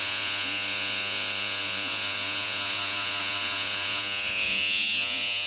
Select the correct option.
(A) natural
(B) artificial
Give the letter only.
B